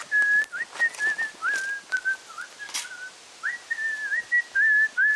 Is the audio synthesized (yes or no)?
no